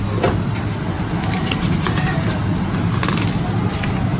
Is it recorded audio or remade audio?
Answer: recorded